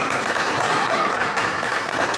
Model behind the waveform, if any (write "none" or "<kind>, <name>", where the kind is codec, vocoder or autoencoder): codec, SNAC